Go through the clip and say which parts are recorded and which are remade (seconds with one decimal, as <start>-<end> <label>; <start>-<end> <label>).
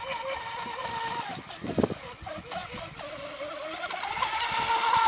0.0-5.1 recorded